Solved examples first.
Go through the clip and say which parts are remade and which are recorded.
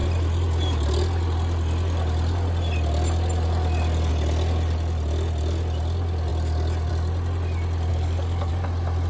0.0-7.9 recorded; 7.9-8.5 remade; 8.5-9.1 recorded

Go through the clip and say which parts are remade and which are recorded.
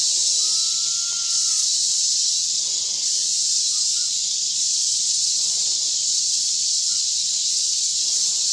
0.0-1.3 recorded; 1.3-2.0 remade; 2.0-4.3 recorded; 4.3-8.5 remade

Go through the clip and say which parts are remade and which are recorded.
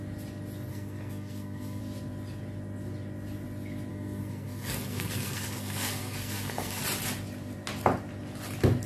0.0-0.7 recorded; 0.7-1.8 remade; 1.8-3.9 recorded; 3.9-6.8 remade; 6.8-8.9 recorded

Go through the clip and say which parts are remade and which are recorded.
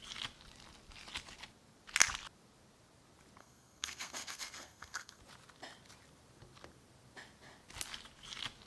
0.0-3.4 recorded; 3.4-5.2 remade; 5.2-8.7 recorded